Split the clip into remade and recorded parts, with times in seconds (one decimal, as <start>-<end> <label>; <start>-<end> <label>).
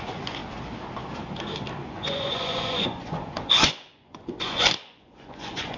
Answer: 0.0-0.4 remade; 0.4-1.8 recorded; 1.8-5.8 remade